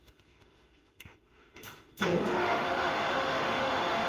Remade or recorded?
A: remade